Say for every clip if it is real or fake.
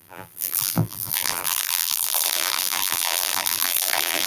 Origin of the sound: fake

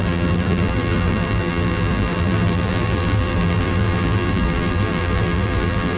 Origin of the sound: fake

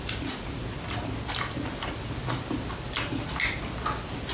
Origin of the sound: real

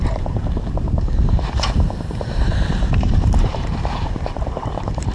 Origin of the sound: fake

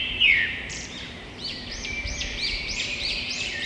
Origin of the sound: fake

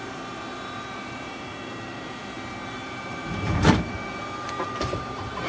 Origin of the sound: fake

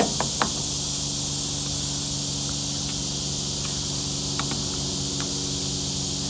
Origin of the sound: real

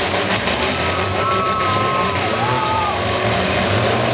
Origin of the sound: fake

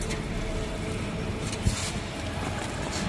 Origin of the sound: real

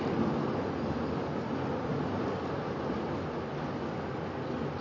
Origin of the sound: real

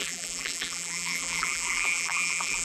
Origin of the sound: fake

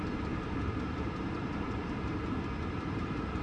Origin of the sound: fake